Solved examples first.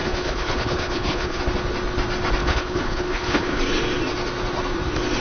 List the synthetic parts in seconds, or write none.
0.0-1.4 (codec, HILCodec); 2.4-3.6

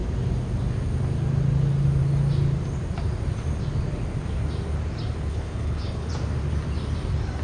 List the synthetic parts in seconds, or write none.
5.3-6.1 (codec, HILCodec)

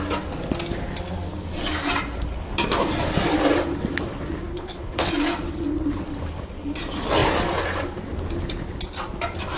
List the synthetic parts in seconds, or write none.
4.5-5.1 (codec, HILCodec)

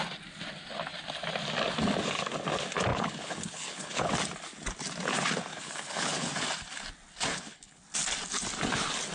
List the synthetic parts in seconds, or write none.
2.9-4.1 (codec, HILCodec); 5.5-6.3; 7.3-7.8